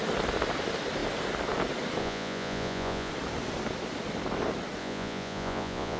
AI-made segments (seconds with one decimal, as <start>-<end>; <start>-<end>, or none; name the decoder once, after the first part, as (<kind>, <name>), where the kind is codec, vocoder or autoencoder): 2.0-3.1 (vocoder, Vocos); 4.8-6.0